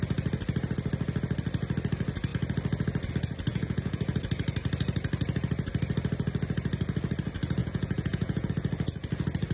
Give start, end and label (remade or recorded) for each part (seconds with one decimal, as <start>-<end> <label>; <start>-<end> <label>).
0.0-3.5 recorded; 3.5-4.0 remade; 4.0-7.6 recorded; 7.6-8.5 remade; 8.5-9.5 recorded